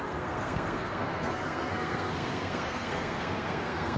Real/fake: fake